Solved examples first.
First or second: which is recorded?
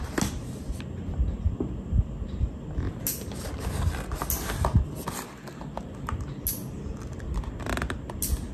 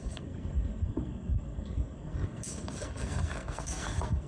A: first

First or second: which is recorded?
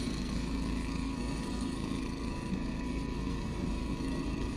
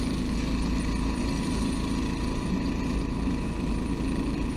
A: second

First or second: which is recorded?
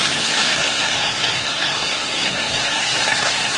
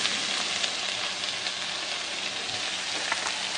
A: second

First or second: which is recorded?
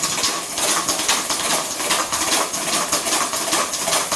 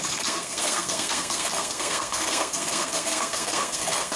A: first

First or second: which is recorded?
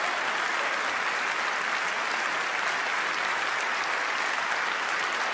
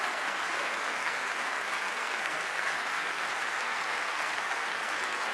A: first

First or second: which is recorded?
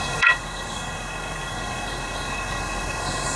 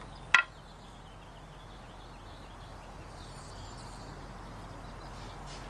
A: second